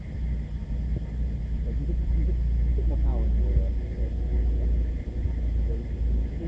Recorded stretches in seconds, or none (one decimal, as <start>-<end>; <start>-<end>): 0.0-6.5